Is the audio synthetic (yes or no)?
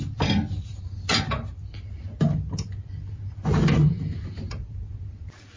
yes